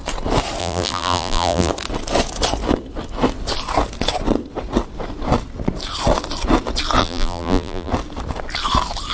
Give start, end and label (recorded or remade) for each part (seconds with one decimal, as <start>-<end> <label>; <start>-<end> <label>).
0.0-0.6 recorded; 0.6-1.7 remade; 1.7-7.0 recorded; 7.0-7.9 remade; 7.9-9.1 recorded